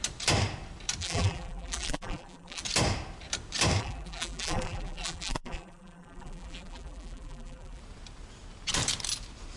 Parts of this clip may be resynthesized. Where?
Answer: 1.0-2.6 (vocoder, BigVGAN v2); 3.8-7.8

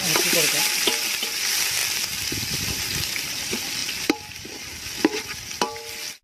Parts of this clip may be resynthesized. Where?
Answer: 1.8-3.4 (vocoder, BigVGAN v2); 3.8-4.4

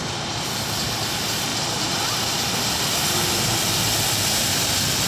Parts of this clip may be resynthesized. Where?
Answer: 0.0-5.1 (vocoder, BigVGAN v2)